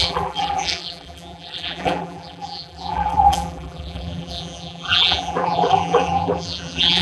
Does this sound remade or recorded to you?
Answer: remade